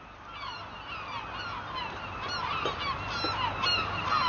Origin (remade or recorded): recorded